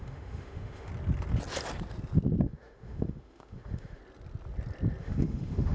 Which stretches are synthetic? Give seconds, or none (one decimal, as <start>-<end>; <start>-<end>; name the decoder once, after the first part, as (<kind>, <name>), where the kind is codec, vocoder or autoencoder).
0.0-0.9 (autoencoder, DAC-VAE); 2.4-4.0; 5.0-5.7